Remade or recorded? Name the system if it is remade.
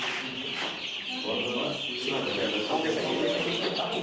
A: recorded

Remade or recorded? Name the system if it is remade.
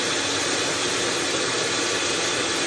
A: recorded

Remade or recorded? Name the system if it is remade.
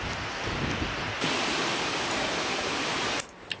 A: recorded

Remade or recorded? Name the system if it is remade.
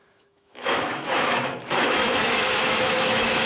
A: remade, autoencoder, DAC-VAE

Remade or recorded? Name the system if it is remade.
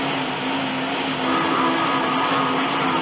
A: recorded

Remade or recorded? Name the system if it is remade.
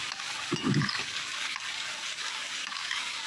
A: remade, codec, DAC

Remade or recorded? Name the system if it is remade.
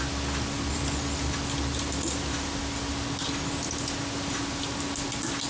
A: recorded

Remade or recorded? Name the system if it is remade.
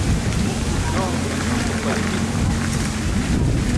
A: remade, vocoder, BigVGAN v2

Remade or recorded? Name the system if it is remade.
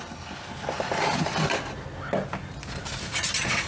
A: recorded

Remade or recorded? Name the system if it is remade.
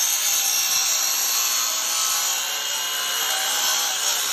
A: recorded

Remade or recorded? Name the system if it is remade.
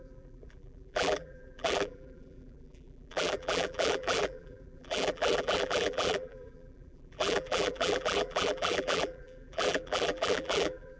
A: remade, vocoder, BigVGAN v2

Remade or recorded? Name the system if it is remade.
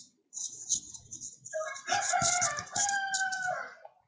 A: remade, vocoder, BigVGAN v2